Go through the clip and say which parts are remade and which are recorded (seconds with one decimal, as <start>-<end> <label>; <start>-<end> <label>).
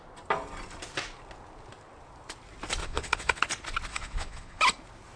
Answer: 0.0-2.8 recorded; 2.8-3.4 remade; 3.4-3.9 recorded; 3.9-4.6 remade; 4.6-5.2 recorded